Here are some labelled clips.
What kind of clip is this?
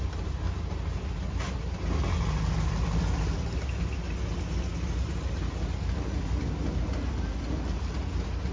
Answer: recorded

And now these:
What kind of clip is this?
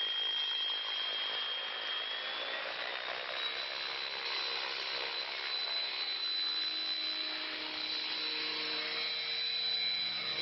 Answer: recorded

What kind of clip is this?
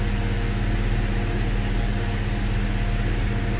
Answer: recorded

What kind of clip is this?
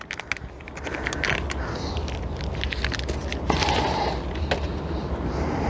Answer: recorded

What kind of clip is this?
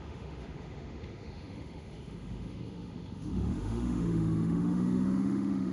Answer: remade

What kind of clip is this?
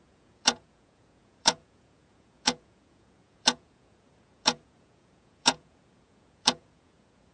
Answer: remade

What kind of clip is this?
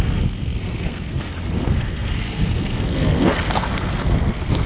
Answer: remade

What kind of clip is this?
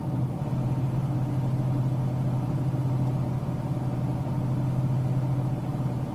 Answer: recorded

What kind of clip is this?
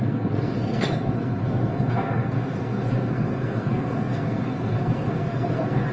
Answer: remade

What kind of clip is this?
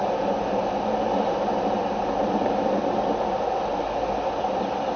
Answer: recorded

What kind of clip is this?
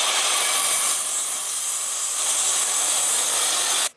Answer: recorded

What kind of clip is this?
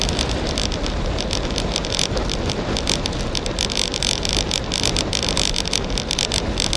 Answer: recorded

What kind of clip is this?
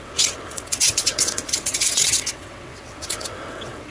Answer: remade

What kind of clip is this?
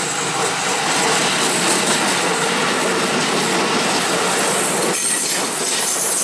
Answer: recorded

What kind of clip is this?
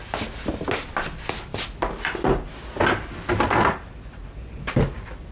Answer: recorded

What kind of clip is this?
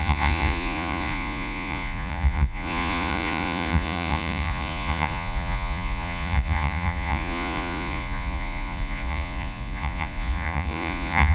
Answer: remade